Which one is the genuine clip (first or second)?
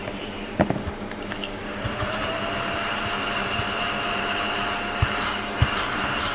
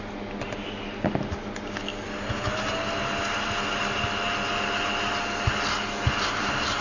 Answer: second